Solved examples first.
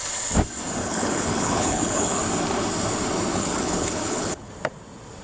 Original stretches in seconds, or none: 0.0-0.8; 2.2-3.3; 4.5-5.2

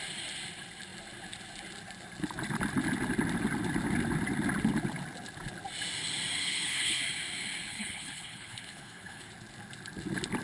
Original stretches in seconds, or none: 0.0-6.4; 7.0-7.7; 9.3-10.4

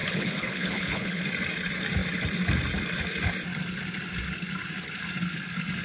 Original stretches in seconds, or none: 1.2-5.8

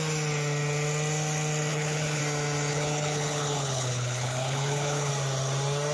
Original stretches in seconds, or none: 0.0-1.7; 2.2-2.7; 5.1-5.9